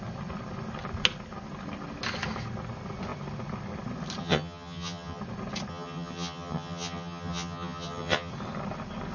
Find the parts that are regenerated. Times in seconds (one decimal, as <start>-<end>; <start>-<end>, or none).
4.2-5.2; 5.7-8.3